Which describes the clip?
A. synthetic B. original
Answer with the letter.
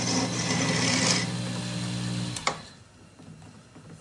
B